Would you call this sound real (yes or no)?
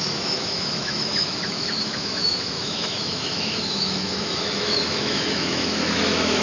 no